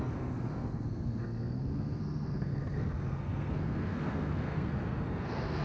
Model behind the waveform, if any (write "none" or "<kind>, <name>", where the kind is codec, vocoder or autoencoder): codec, SNAC